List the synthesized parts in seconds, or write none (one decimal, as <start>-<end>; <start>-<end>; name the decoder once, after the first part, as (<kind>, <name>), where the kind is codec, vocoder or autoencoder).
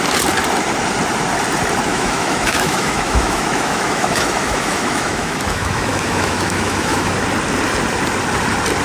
1.9-7.1 (autoencoder, DAC-VAE)